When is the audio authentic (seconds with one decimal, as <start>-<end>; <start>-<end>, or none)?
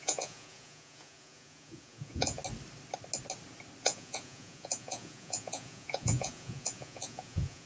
2.4-3.8